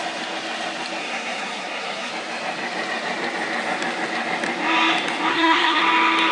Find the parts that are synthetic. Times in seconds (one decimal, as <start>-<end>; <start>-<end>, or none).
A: 1.0-2.1; 5.3-5.8